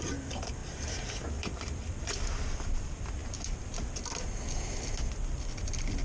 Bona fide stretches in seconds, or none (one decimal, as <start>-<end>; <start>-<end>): 3.2-3.7